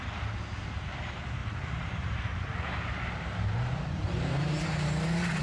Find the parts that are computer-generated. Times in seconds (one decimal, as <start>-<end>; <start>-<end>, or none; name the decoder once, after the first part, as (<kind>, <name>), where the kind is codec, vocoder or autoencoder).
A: 1.4-4.6 (vocoder, BigVGAN v2)